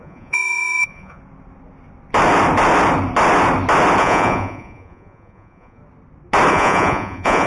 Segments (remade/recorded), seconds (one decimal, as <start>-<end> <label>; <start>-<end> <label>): 0.0-1.2 remade; 1.2-4.0 recorded; 4.0-5.8 remade; 5.8-6.5 recorded; 6.5-7.5 remade